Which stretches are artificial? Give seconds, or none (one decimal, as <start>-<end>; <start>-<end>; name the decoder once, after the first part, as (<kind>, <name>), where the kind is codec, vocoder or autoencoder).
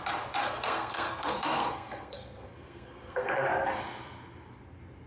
0.4-3.5 (codec, SNAC)